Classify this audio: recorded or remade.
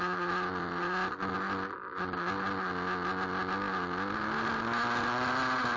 recorded